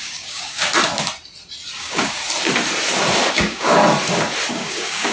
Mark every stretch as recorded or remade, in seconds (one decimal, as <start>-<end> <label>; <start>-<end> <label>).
0.0-0.7 remade; 0.7-1.8 recorded; 1.8-2.2 remade; 2.2-3.3 recorded; 3.3-3.8 remade; 3.8-4.5 recorded; 4.5-5.1 remade